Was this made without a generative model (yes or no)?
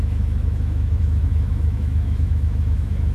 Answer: no